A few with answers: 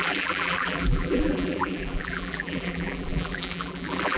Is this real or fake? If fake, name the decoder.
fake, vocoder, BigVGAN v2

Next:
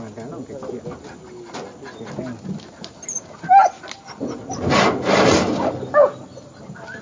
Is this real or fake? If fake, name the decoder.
real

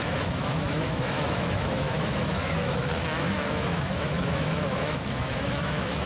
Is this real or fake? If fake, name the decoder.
fake, autoencoder, DAC-VAE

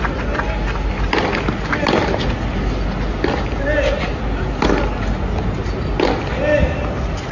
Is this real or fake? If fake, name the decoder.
real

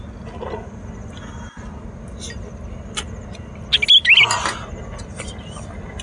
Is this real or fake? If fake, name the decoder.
real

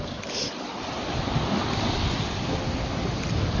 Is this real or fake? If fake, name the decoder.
real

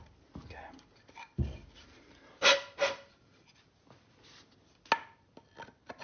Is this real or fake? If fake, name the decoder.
real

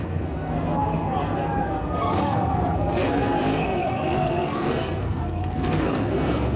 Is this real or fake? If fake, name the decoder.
fake, codec, SNAC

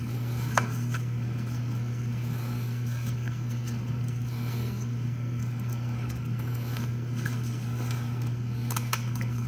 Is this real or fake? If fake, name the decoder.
fake, codec, SNAC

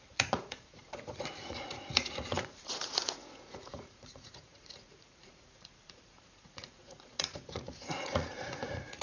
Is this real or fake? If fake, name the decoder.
fake, vocoder, Vocos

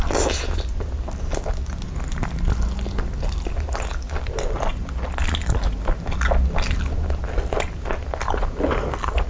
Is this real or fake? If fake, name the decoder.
real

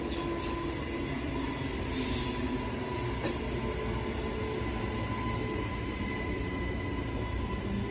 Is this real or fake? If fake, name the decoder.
real